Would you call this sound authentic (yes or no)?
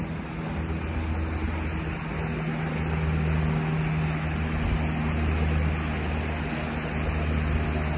yes